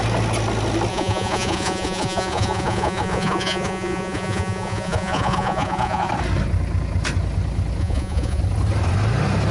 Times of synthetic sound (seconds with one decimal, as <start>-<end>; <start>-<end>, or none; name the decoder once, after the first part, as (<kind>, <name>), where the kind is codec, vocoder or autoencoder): 0.9-6.1 (vocoder, Vocos); 7.8-8.4